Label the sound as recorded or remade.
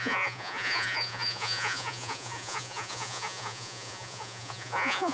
remade